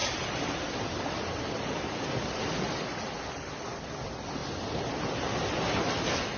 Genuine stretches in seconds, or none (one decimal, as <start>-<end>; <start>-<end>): 0.0-6.4